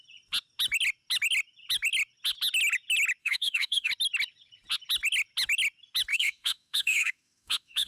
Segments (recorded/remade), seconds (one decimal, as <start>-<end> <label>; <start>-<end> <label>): 0.0-3.2 recorded; 3.2-3.9 remade; 3.9-6.1 recorded; 6.1-7.9 remade